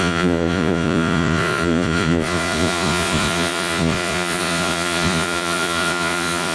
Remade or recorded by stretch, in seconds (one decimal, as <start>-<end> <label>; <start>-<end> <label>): 0.0-6.5 remade